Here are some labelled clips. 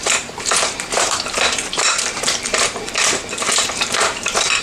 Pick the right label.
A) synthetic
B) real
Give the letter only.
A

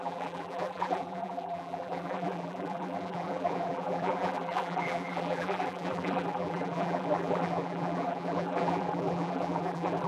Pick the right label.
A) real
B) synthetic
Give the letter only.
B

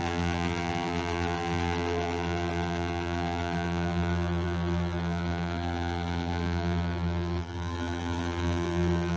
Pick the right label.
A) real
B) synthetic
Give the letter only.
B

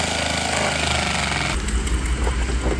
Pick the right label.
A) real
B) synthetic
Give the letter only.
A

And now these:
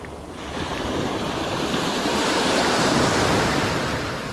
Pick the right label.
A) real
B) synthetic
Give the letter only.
B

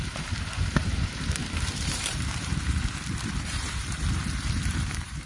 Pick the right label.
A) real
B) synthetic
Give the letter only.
B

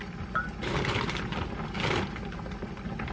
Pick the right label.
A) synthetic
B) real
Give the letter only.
A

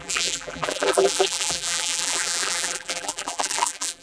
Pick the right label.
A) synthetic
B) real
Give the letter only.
A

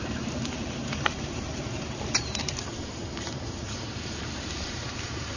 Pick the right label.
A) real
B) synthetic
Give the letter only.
B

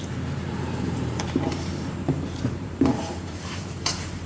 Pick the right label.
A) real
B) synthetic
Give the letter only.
B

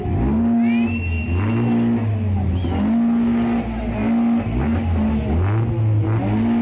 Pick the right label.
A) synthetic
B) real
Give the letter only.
B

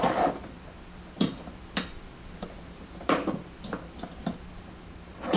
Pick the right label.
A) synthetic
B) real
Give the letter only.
A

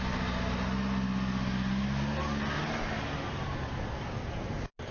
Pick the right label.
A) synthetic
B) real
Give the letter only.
B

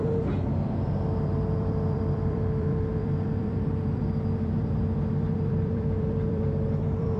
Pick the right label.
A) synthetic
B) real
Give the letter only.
A